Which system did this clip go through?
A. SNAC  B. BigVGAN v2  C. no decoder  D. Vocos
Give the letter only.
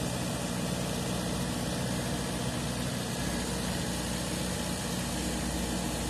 C